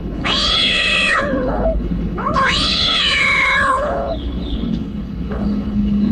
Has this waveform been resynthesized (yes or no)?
yes